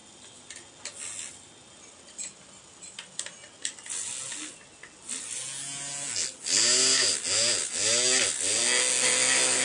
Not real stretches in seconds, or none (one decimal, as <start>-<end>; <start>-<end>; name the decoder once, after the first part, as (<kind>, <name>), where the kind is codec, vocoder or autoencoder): none